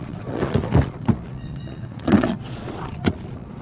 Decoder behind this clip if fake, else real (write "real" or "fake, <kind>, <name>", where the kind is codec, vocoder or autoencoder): fake, vocoder, Vocos